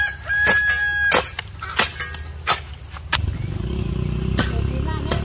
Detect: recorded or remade recorded